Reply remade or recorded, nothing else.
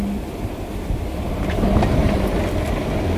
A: recorded